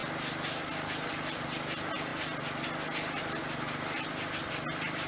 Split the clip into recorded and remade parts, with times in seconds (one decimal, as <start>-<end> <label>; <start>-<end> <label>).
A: 0.0-5.1 recorded